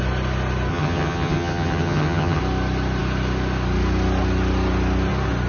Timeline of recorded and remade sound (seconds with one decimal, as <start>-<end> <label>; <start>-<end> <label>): 0.0-0.7 recorded; 0.7-2.4 remade; 2.4-5.5 recorded